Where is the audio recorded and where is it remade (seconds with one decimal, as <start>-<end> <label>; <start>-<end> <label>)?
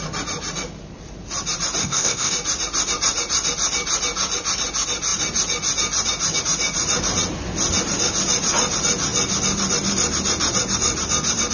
0.0-1.8 recorded; 1.8-2.3 remade; 2.3-11.5 recorded